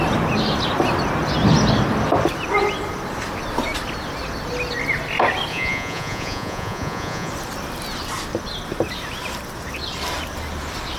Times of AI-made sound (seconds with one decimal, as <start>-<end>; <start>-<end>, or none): 5.5-7.3